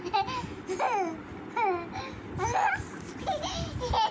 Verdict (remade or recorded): recorded